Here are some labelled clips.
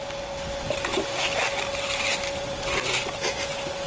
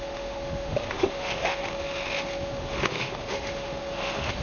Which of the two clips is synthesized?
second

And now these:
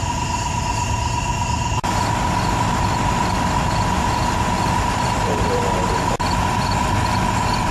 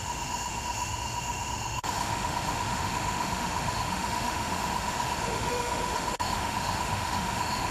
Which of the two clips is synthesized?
second